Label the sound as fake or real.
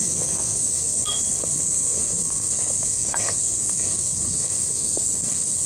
fake